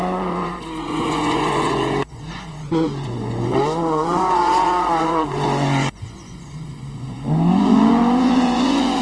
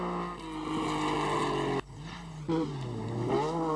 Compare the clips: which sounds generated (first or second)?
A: first